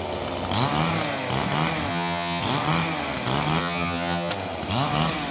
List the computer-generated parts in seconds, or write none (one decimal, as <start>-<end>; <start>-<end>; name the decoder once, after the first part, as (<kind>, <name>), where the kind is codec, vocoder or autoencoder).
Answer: 1.9-2.4 (vocoder, HiFi-GAN); 3.6-4.3